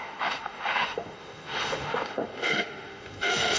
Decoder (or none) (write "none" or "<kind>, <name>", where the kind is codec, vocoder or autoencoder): autoencoder, DAC-VAE